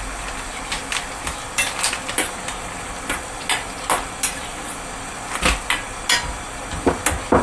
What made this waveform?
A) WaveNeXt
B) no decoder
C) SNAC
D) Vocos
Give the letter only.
B